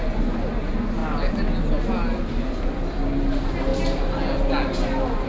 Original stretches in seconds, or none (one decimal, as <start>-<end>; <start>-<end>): 0.0-5.3